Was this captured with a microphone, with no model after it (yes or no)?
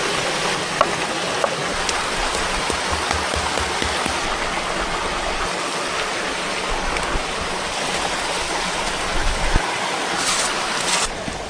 yes